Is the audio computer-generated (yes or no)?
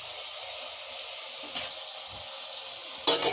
no